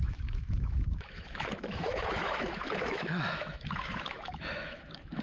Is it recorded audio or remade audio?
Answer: remade